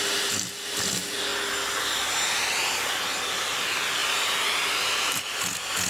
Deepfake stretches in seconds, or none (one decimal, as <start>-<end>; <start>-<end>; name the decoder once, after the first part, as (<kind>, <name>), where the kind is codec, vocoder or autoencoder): 4.0-5.2 (vocoder, BigVGAN v2)